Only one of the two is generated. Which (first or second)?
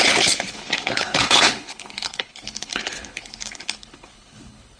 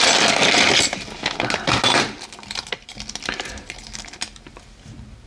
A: first